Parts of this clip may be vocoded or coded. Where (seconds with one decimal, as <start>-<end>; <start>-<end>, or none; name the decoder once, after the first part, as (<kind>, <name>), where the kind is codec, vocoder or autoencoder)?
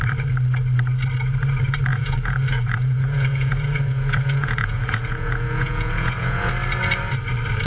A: 1.9-6.5 (vocoder, Vocos)